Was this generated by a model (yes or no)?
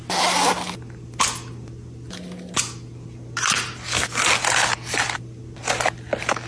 no